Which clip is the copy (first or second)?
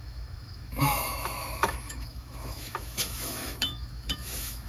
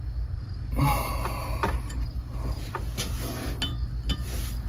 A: first